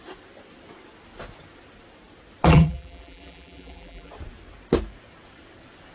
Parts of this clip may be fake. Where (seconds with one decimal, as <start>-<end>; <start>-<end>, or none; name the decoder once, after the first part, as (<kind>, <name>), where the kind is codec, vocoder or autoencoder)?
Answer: 2.5-4.1 (vocoder, BigVGAN v2)